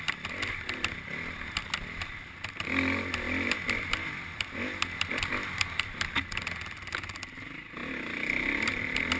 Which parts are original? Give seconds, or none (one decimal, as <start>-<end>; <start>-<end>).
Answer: 0.0-9.2